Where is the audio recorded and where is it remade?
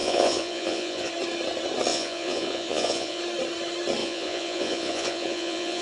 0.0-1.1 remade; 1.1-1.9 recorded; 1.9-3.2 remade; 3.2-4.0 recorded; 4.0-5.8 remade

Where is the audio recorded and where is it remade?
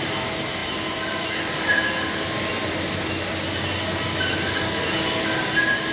0.0-5.9 recorded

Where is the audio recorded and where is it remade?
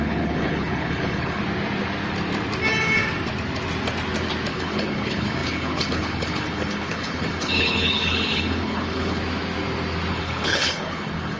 0.0-1.4 remade; 1.4-4.5 recorded; 4.5-9.2 remade; 9.2-10.1 recorded; 10.1-11.4 remade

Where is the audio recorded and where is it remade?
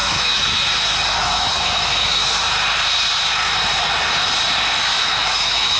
0.0-0.6 remade; 0.6-1.2 recorded; 1.2-2.3 remade; 2.3-4.9 recorded; 4.9-5.8 remade